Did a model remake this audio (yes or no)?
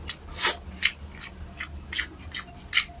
no